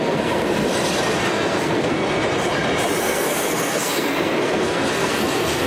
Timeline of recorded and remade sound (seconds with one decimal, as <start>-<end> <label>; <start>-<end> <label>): 0.0-0.7 remade; 0.7-1.3 recorded; 1.3-2.0 remade; 2.0-3.0 recorded; 3.0-5.7 remade